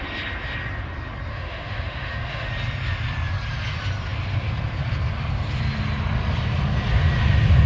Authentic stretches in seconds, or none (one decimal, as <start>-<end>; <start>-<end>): 0.0-1.3; 2.5-7.7